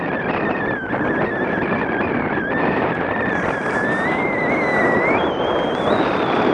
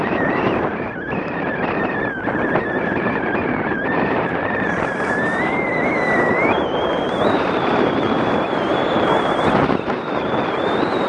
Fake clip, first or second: second